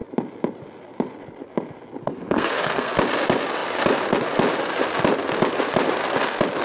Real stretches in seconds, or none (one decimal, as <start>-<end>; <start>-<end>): 0.0-2.0; 2.9-6.6